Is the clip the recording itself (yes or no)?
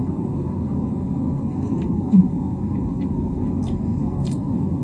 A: no